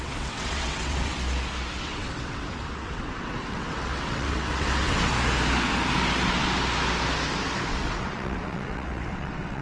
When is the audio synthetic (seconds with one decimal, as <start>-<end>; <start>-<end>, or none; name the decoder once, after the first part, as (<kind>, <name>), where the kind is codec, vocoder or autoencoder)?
0.0-1.1 (vocoder, WaveNeXt); 1.8-5.1; 7.8-9.6